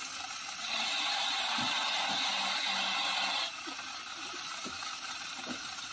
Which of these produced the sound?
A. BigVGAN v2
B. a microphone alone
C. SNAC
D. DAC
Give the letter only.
B